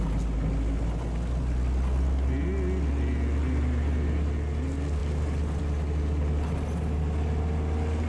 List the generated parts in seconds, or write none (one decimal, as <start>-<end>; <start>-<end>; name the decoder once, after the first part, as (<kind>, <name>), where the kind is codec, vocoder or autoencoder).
none